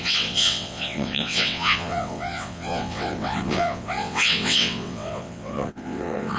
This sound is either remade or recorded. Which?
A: remade